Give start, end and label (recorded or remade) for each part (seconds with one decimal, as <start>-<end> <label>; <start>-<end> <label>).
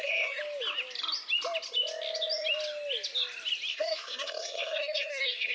0.0-0.4 remade; 0.4-3.7 recorded; 3.7-5.5 remade